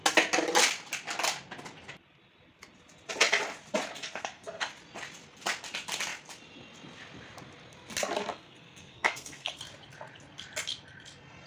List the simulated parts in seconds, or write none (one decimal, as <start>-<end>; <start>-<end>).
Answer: 4.0-4.7; 8.3-9.6